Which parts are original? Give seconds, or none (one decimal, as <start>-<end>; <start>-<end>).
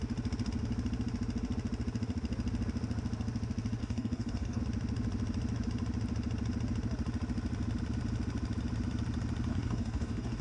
0.0-3.8; 4.6-9.5